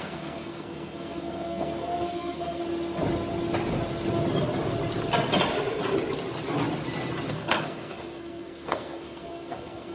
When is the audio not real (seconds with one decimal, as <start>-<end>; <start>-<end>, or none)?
0.0-2.6; 7.3-9.9